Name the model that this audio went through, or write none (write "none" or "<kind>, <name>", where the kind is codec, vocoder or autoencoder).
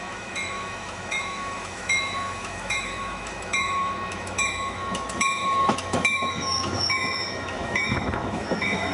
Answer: autoencoder, DAC-VAE